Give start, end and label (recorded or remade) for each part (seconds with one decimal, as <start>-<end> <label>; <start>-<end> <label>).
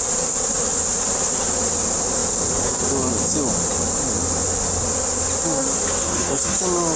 0.0-6.0 recorded; 6.0-6.6 remade; 6.6-7.0 recorded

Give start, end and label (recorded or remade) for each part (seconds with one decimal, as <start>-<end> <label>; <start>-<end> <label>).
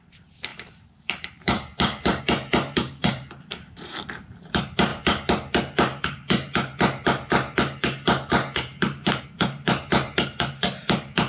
0.0-11.3 remade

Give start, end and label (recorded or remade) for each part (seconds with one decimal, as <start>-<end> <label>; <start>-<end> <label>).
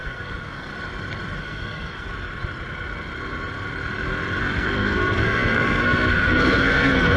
0.0-0.7 remade; 0.7-1.4 recorded; 1.4-2.1 remade; 2.1-4.4 recorded; 4.4-7.2 remade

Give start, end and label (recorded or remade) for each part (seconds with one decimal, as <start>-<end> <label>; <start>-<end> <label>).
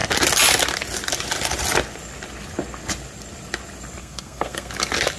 0.0-4.0 recorded; 4.0-4.7 remade; 4.7-5.2 recorded